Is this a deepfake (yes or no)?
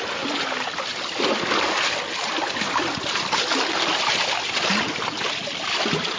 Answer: no